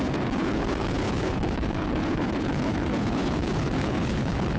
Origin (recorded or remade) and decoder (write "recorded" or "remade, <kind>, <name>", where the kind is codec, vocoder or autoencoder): remade, codec, HILCodec